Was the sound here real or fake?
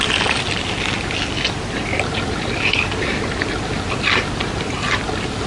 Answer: real